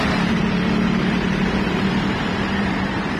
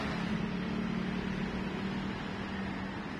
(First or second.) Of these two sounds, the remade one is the first